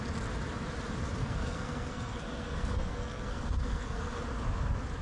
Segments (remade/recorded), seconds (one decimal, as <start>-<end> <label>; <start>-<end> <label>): 0.0-1.2 recorded; 1.2-4.2 remade; 4.2-5.0 recorded